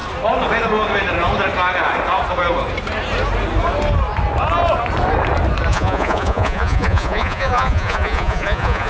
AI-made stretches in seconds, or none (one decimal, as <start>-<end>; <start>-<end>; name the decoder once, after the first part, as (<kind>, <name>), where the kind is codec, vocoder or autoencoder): 5.7-8.9 (vocoder, Vocos)